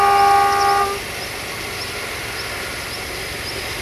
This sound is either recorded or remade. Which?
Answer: recorded